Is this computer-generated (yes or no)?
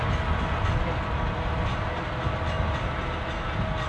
no